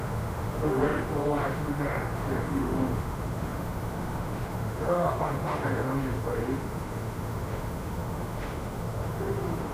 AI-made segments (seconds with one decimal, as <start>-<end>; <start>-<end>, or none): 0.0-9.7